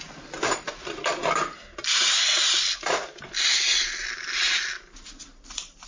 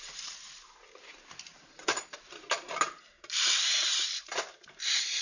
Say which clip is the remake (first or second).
second